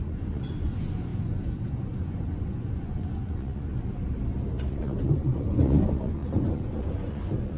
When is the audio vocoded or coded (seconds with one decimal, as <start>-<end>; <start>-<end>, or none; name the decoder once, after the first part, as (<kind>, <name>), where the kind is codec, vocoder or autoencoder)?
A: 0.0-3.7 (vocoder, Vocos); 4.7-7.6